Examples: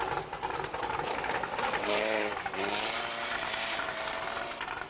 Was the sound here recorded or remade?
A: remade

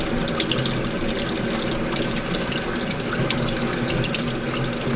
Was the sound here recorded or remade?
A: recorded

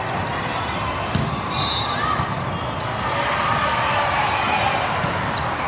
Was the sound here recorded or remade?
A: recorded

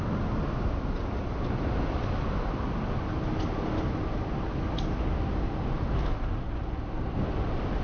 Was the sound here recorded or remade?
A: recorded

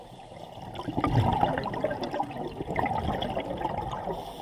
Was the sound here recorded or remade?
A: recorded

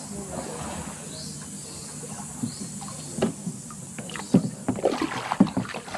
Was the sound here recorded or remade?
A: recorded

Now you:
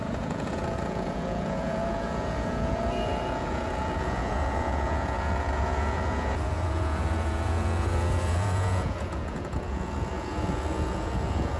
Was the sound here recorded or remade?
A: remade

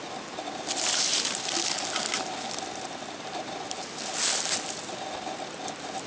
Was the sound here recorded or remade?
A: recorded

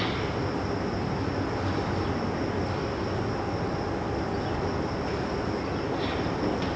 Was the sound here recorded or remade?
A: recorded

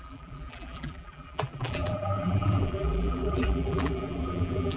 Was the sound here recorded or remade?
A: remade